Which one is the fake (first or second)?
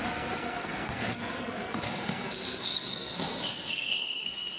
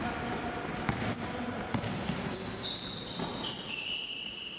first